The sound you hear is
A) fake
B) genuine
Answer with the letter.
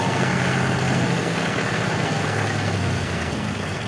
A